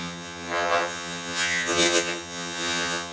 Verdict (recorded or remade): remade